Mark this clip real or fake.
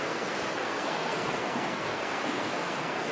fake